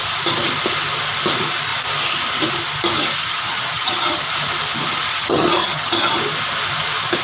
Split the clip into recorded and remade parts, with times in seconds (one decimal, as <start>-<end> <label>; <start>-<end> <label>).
0.0-3.2 recorded; 3.2-4.2 remade; 4.2-5.1 recorded; 5.1-6.2 remade; 6.2-7.2 recorded